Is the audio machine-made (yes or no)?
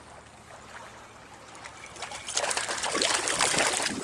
no